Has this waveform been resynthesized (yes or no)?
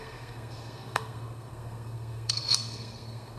yes